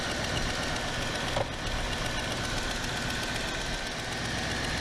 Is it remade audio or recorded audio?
recorded